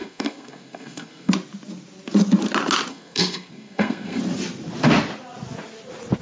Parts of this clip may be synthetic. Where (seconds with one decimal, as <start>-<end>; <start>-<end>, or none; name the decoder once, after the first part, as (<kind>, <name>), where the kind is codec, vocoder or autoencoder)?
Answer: 0.0-1.3 (codec, SNAC); 2.9-4.2